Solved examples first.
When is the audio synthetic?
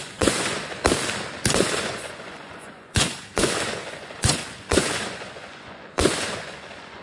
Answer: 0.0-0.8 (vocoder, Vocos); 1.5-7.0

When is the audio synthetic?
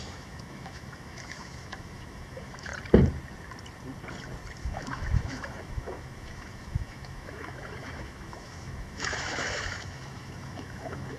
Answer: 0.0-2.7 (autoencoder, DAC-VAE); 4.6-11.2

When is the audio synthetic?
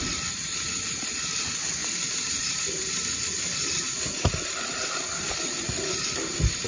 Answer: none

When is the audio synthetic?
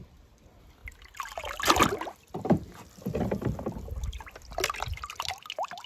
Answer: none